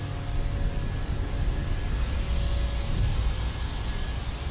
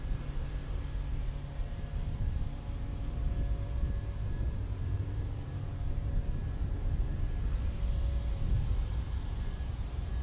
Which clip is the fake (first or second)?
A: second